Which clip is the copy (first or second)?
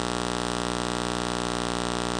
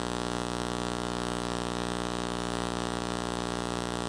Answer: second